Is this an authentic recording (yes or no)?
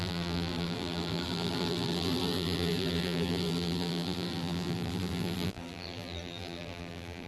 no